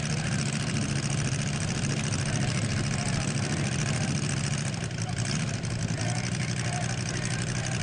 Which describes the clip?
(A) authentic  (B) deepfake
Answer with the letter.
B